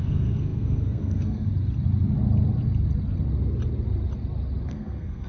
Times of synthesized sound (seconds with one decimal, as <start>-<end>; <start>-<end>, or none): 0.0-1.5; 4.7-5.3